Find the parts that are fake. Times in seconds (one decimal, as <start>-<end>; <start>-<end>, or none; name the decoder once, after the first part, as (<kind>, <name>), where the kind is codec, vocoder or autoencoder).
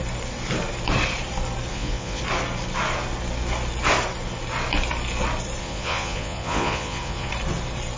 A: 1.7-2.2 (vocoder, Vocos); 5.6-7.3